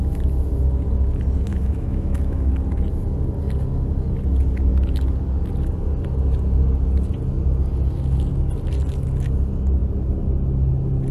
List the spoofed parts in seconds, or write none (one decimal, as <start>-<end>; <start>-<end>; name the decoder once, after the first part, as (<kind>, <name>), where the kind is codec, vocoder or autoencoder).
1.5-2.5 (autoencoder, DAC-VAE)